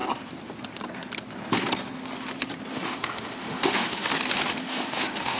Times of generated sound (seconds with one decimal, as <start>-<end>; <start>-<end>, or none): 2.7-4.1; 4.6-5.4

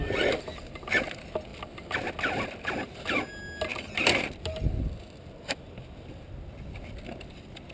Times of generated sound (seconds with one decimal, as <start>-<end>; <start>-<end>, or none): none